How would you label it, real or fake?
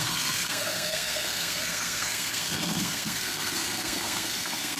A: fake